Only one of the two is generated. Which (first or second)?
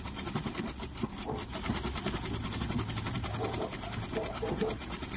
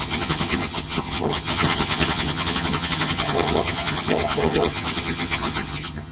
second